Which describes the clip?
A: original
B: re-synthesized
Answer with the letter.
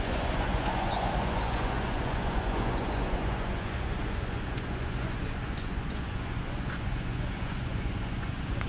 B